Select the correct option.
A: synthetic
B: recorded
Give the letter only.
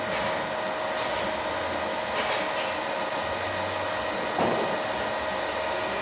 B